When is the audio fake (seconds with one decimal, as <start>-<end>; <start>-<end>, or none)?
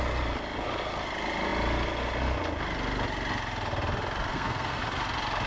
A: 4.3-4.8